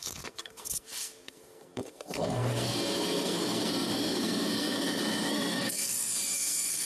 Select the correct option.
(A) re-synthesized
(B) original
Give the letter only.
A